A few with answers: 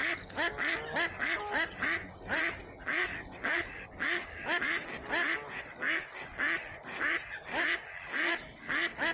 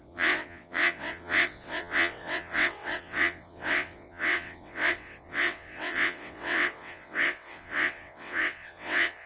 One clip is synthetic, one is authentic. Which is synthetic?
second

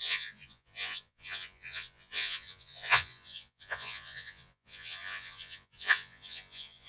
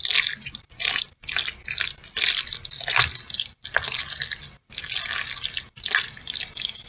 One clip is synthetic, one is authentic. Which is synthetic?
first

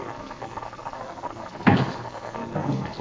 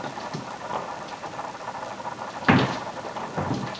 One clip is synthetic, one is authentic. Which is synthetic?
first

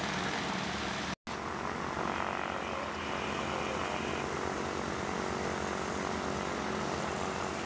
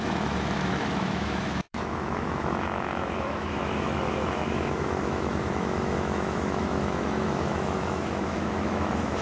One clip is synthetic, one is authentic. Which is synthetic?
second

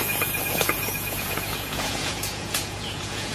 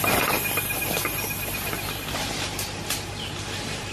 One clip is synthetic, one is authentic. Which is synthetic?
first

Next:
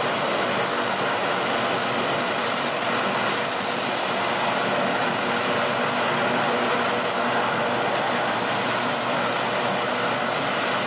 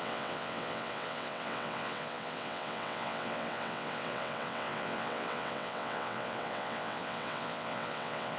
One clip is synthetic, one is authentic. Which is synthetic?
second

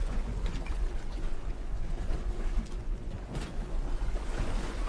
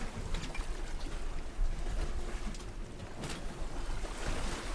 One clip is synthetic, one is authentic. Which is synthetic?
first